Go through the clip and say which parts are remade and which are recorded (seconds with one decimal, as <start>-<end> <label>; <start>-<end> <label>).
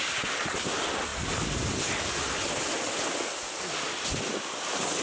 0.0-5.0 recorded